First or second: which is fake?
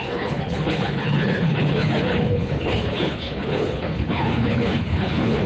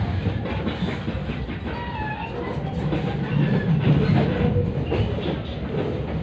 first